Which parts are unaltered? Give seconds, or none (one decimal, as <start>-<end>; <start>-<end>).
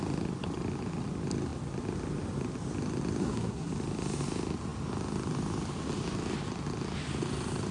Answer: 0.0-3.2; 3.7-7.7